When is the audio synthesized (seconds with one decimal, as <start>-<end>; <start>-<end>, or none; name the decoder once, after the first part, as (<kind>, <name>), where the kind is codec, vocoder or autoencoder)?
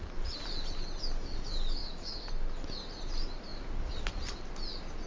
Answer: 1.8-2.3 (autoencoder, DAC-VAE)